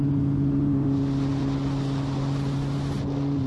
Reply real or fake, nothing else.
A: real